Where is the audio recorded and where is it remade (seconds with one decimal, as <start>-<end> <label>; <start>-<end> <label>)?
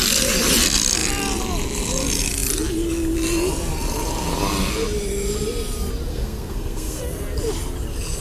0.0-6.1 recorded; 6.1-7.0 remade; 7.0-8.2 recorded